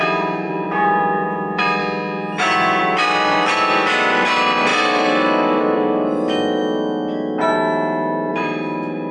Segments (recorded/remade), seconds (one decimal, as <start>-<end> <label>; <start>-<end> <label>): 0.0-1.8 remade; 1.8-2.8 recorded; 2.8-6.6 remade; 6.6-8.3 recorded; 8.3-9.1 remade